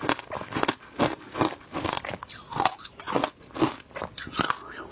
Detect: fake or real real